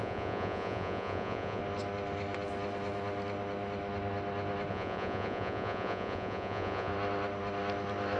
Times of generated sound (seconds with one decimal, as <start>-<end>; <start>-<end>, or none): 0.0-1.6; 4.7-6.9